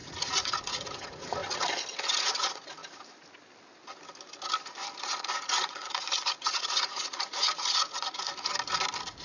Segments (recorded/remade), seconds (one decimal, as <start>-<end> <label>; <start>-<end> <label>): 0.0-1.4 remade; 1.4-1.9 recorded; 1.9-2.8 remade; 2.8-5.0 recorded; 5.0-8.5 remade; 8.5-9.2 recorded